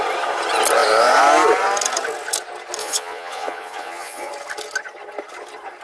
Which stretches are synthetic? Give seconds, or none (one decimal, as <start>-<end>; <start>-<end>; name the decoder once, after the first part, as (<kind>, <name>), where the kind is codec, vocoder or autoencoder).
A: 2.8-4.3 (vocoder, Vocos)